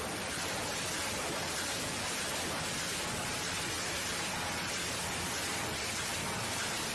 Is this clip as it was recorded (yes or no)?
yes